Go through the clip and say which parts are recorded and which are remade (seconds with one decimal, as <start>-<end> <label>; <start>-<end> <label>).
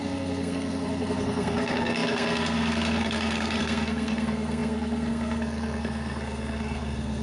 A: 0.0-7.2 remade